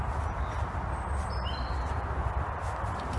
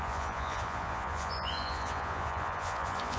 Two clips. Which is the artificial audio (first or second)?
second